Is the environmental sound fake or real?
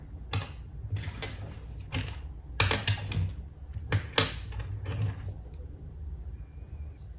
real